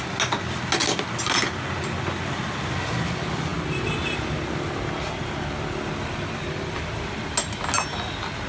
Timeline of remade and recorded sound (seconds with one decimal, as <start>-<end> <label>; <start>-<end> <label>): 0.0-8.5 recorded